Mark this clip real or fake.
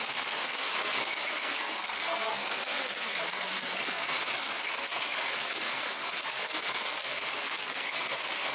fake